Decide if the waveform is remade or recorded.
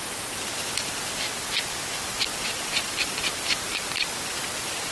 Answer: remade